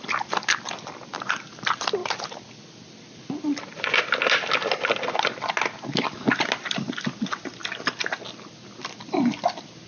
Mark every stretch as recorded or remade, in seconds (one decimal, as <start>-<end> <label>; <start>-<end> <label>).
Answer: 0.0-2.0 recorded; 2.0-4.0 remade; 4.0-9.9 recorded

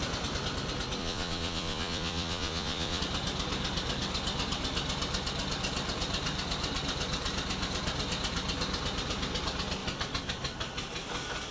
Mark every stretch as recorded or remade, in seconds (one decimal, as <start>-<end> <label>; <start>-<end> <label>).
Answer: 0.0-1.0 recorded; 1.0-3.0 remade; 3.0-11.5 recorded

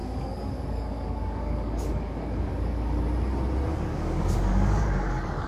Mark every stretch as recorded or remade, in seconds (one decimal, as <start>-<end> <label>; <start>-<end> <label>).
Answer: 0.0-3.0 remade; 3.0-3.7 recorded; 3.7-5.5 remade

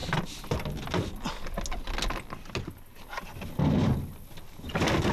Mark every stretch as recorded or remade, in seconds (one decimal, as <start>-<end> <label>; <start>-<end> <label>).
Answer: 0.0-5.1 recorded

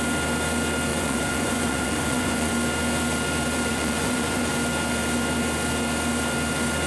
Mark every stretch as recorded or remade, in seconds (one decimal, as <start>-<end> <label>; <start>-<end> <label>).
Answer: 0.0-0.9 recorded; 0.9-2.5 remade; 2.5-3.7 recorded; 3.7-4.5 remade; 4.5-6.9 recorded

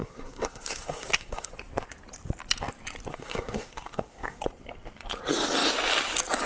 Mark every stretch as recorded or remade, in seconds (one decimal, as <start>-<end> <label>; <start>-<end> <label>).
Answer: 0.0-1.5 remade; 1.5-3.1 recorded; 3.1-4.4 remade; 4.4-6.5 recorded